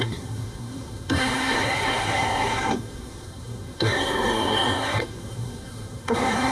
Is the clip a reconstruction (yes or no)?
yes